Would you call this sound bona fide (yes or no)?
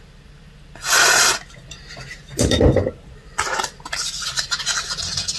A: yes